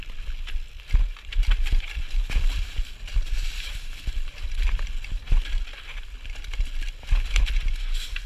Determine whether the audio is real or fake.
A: real